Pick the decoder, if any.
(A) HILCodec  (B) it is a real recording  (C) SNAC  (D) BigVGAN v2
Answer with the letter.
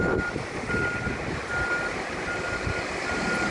B